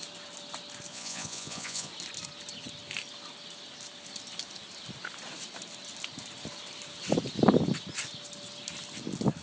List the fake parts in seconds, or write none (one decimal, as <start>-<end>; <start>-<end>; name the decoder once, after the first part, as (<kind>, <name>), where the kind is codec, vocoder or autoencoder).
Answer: 0.9-1.9 (vocoder, Vocos)